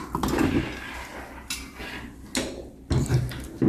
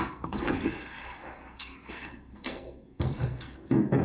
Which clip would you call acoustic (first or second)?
first